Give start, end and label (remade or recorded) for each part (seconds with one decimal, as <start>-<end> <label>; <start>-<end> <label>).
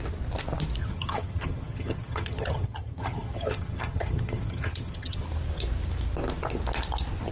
0.0-0.8 recorded; 0.8-5.2 remade; 5.2-7.3 recorded